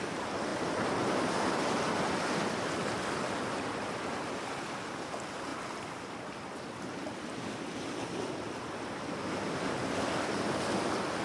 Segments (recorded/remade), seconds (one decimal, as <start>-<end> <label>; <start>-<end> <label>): 0.0-11.2 recorded